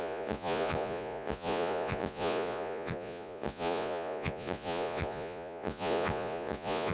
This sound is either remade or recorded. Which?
remade